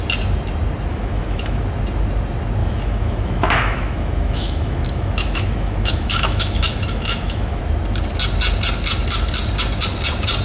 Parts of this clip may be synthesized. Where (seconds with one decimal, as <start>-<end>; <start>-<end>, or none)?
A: 0.9-1.6; 2.6-7.6